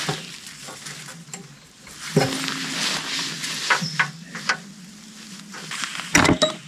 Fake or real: real